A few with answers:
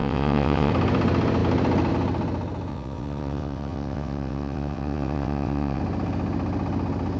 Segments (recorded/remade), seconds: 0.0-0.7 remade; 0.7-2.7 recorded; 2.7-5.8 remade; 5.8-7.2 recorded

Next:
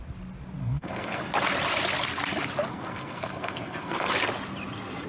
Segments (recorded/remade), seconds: 0.0-0.6 recorded; 0.6-1.2 remade; 1.2-2.7 recorded; 2.7-4.1 remade; 4.1-5.1 recorded

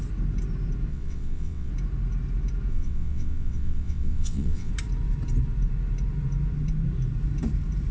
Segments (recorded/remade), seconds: 0.0-0.9 recorded; 0.9-1.7 remade; 1.7-2.7 recorded; 2.7-4.7 remade; 4.7-7.9 recorded

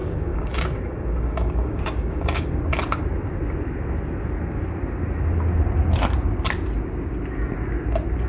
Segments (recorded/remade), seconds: 0.0-2.6 remade; 2.6-8.3 recorded

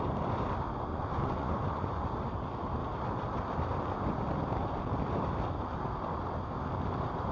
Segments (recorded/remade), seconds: 0.0-0.9 recorded; 0.9-2.1 remade; 2.1-7.3 recorded

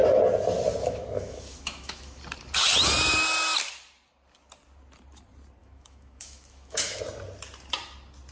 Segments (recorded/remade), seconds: 0.0-0.8 recorded; 0.8-2.2 remade; 2.2-5.6 recorded; 5.6-7.0 remade; 7.0-8.3 recorded

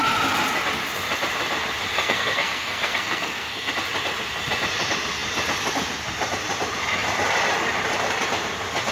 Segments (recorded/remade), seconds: 0.0-1.9 recorded; 1.9-3.7 remade; 3.7-8.9 recorded

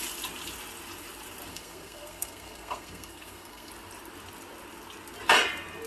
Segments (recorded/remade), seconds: 0.0-1.5 recorded; 1.5-3.7 remade; 3.7-5.9 recorded